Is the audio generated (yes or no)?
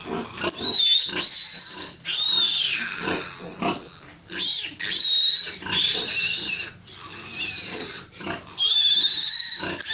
no